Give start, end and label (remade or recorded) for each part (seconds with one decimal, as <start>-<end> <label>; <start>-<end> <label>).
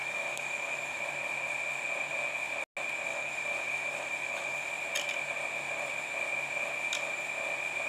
0.0-1.0 remade; 1.0-3.1 recorded; 3.1-4.7 remade; 4.7-7.9 recorded